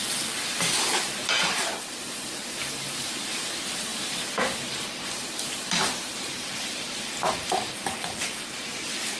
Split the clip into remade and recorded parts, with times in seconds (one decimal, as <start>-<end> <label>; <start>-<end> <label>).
0.0-3.9 remade; 3.9-4.4 recorded; 4.4-9.2 remade